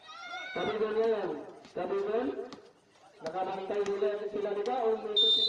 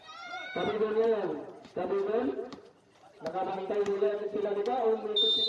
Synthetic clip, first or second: second